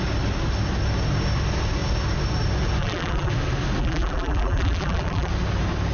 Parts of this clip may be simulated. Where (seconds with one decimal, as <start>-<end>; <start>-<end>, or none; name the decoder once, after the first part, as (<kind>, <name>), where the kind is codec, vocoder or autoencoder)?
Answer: 2.8-3.3 (vocoder, BigVGAN v2); 3.8-5.3